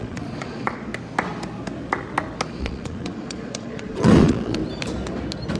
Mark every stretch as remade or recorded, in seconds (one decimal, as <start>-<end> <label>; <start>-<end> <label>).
0.0-0.9 remade; 0.9-2.6 recorded; 2.6-4.6 remade; 4.6-5.6 recorded